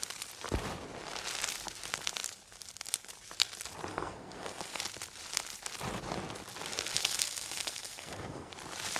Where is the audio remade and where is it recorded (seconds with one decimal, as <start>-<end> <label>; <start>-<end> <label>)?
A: 0.0-3.9 recorded; 3.9-4.8 remade; 4.8-6.9 recorded; 6.9-8.5 remade; 8.5-9.0 recorded